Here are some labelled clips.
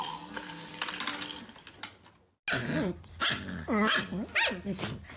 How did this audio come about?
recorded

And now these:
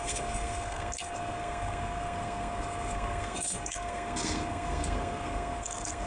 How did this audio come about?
remade